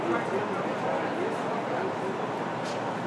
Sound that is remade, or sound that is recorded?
recorded